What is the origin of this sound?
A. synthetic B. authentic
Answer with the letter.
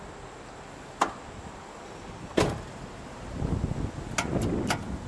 B